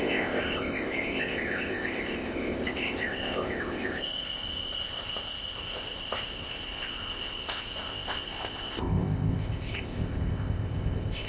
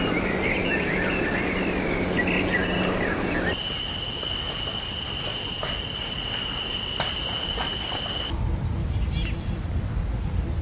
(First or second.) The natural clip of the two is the second